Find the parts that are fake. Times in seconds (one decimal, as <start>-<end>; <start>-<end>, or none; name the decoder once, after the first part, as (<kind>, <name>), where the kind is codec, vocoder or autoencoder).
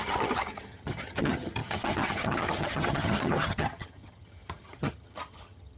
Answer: 0.0-5.8 (vocoder, HiFi-GAN)